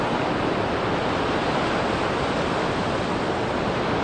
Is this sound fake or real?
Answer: real